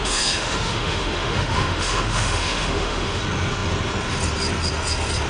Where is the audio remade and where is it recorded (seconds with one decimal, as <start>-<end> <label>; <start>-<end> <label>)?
0.0-3.2 remade; 3.2-5.3 recorded